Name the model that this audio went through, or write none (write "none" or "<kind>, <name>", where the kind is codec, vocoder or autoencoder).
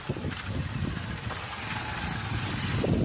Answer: none